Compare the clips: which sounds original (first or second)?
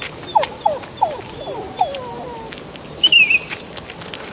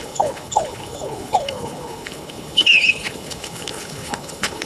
first